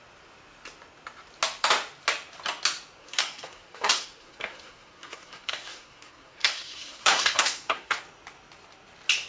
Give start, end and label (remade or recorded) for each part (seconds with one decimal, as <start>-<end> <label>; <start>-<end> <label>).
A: 0.0-3.0 recorded; 3.0-8.0 remade; 8.0-9.3 recorded